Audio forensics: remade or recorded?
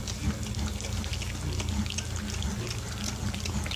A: recorded